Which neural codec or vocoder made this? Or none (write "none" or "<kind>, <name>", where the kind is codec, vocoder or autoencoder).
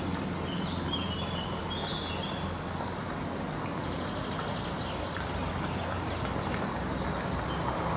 none